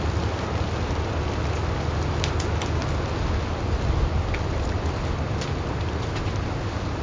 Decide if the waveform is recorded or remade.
recorded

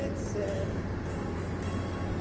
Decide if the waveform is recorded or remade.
recorded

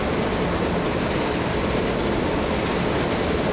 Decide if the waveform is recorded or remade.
recorded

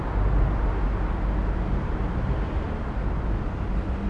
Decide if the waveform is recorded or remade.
recorded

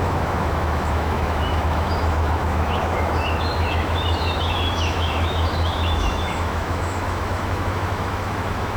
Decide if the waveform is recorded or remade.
remade